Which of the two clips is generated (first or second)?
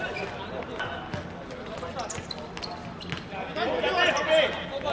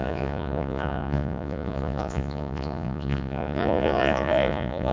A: second